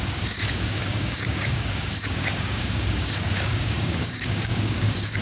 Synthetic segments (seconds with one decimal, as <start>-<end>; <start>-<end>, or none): 0.0-5.2